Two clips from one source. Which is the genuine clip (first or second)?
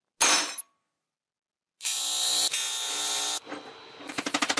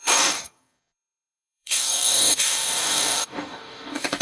first